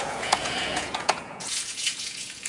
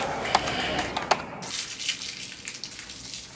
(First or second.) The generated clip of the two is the first